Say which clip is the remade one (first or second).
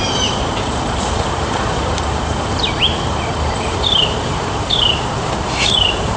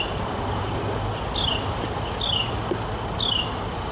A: first